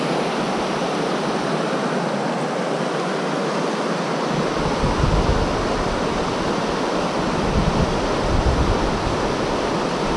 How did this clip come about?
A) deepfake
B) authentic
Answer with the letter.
B